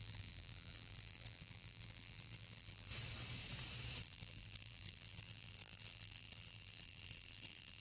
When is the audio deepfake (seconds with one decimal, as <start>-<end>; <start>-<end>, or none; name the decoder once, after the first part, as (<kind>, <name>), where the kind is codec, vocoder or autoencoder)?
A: 0.0-2.9 (vocoder, BigVGAN v2); 4.0-7.8